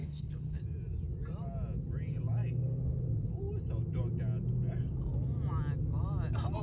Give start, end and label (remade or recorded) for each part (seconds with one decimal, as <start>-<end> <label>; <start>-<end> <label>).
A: 0.0-0.6 remade; 0.6-6.6 recorded